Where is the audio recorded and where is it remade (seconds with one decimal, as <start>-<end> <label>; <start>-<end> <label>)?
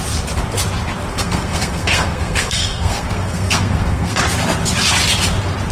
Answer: 0.0-1.1 recorded; 1.1-4.2 remade; 4.2-5.7 recorded